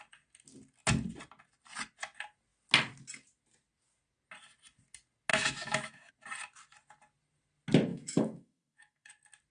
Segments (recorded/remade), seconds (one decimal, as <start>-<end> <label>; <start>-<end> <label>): 0.0-5.3 recorded; 5.3-6.1 remade; 6.1-7.9 recorded; 7.9-9.1 remade; 9.1-9.5 recorded